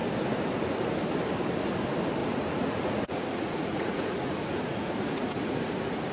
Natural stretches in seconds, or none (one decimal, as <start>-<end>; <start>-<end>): 0.0-2.2